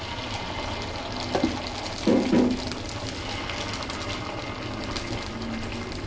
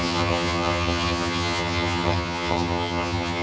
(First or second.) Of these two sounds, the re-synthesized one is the second